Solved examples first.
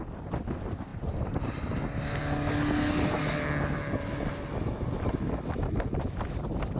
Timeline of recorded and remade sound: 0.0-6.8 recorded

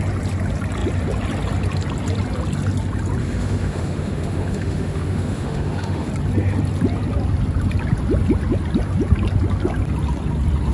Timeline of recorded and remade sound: 0.0-3.2 recorded; 3.2-6.1 remade; 6.1-10.7 recorded

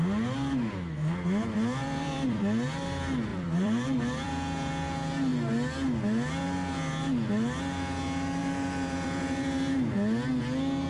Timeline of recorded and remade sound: 0.0-1.8 recorded; 1.8-2.4 remade; 2.4-3.3 recorded; 3.3-4.3 remade; 4.3-8.4 recorded; 8.4-9.6 remade; 9.6-10.9 recorded

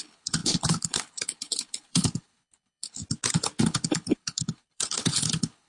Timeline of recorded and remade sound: 0.0-3.0 remade; 3.0-3.6 recorded; 3.6-5.7 remade

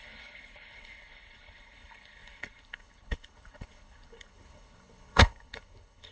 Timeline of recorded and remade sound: 0.0-6.1 remade